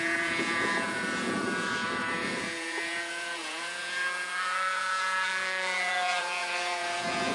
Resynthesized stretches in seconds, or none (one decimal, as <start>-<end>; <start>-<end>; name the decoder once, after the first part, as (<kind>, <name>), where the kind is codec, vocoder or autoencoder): 0.0-7.3 (vocoder, Vocos)